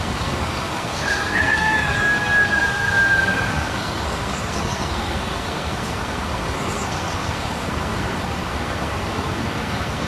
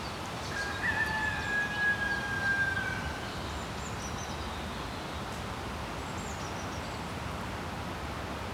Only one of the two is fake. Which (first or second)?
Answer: first